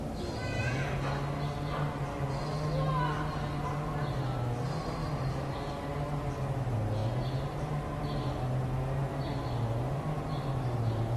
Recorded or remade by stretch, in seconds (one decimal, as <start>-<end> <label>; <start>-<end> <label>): 0.0-0.5 recorded; 0.5-1.0 remade; 1.0-11.2 recorded

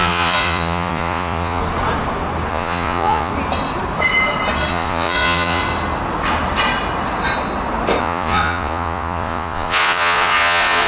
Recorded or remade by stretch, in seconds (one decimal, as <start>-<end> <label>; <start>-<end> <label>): 0.0-1.6 remade; 1.6-2.5 recorded; 2.5-3.3 remade; 3.3-4.7 recorded; 4.7-5.6 remade; 5.6-8.0 recorded; 8.0-10.9 remade

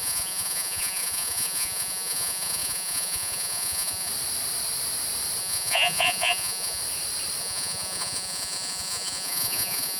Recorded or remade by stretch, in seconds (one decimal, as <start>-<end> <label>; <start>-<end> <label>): 0.0-4.1 remade; 4.1-5.4 recorded; 5.4-6.8 remade; 6.8-7.4 recorded; 7.4-10.0 remade

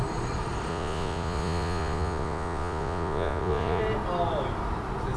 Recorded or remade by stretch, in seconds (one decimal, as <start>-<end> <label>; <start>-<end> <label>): 0.0-0.7 recorded; 0.7-3.8 remade; 3.8-5.2 recorded

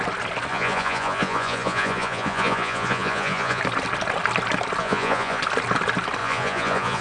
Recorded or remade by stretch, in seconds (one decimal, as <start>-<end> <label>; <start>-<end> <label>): 0.0-0.5 recorded; 0.5-3.6 remade; 3.6-4.8 recorded; 4.8-5.4 remade; 5.4-6.2 recorded; 6.2-7.0 remade

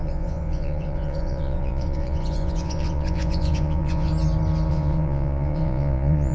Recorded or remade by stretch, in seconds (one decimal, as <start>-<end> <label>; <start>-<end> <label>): 0.0-4.1 remade; 4.1-4.7 recorded; 4.7-6.3 remade

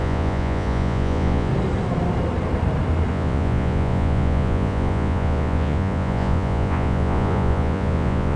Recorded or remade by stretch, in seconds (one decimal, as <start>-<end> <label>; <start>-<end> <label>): 0.0-1.5 remade; 1.5-3.1 recorded; 3.1-8.4 remade

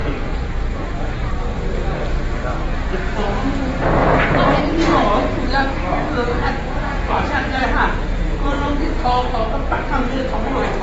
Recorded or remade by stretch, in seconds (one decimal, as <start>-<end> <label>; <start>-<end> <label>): 0.0-1.3 remade; 1.3-4.0 recorded; 4.0-4.6 remade; 4.6-6.3 recorded; 6.3-8.8 remade; 8.8-10.8 recorded